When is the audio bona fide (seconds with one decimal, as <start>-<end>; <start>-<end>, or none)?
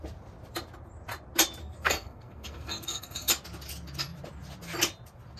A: 0.0-1.6; 3.3-5.4